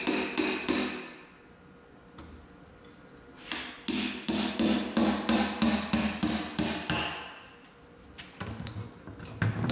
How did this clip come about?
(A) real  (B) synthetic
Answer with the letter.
A